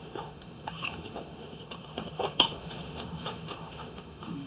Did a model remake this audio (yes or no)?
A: yes